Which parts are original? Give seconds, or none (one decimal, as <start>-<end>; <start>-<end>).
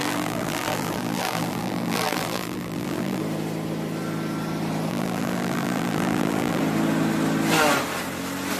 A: 3.2-4.9; 6.6-8.6